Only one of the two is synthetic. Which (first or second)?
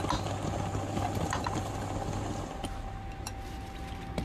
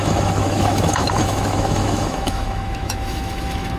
second